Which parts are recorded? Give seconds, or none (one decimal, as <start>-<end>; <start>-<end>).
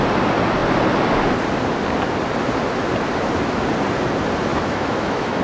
0.0-4.5